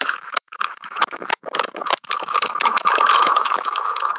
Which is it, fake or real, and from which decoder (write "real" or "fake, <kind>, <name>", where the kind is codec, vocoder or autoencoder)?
fake, autoencoder, DAC-VAE